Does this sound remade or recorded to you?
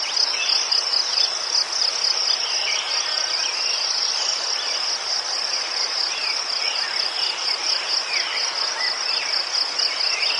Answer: recorded